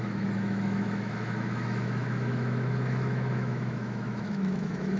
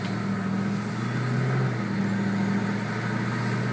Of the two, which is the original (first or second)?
second